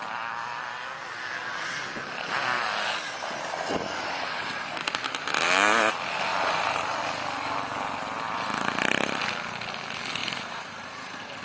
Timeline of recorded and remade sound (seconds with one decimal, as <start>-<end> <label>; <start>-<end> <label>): 0.0-6.3 recorded; 6.3-7.0 remade; 7.0-10.2 recorded; 10.2-11.4 remade